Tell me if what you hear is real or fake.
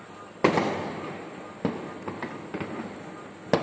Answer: real